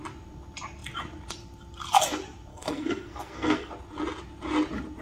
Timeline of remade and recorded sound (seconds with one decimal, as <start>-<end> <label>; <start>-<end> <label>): 0.0-2.5 recorded; 2.5-3.7 remade; 3.7-5.0 recorded